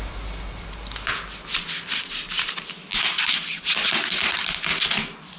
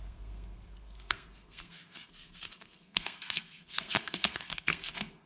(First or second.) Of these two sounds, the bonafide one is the first